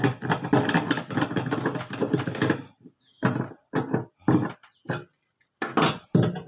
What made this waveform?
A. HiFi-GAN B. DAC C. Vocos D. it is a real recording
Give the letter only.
D